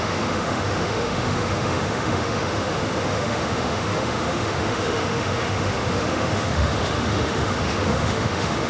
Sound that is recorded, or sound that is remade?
remade